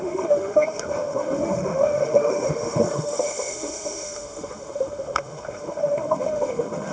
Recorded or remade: remade